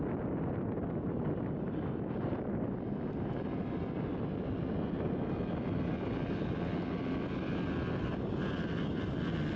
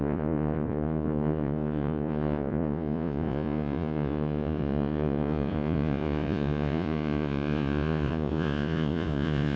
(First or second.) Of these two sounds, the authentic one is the first